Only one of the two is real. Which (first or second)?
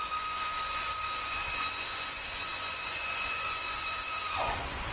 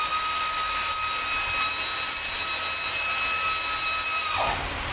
second